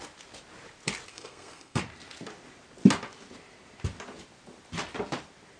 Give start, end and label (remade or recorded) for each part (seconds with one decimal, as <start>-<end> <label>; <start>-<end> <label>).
0.0-1.1 recorded; 1.1-1.8 remade; 1.8-5.6 recorded